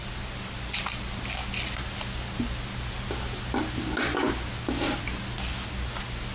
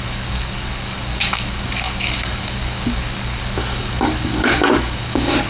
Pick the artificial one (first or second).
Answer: second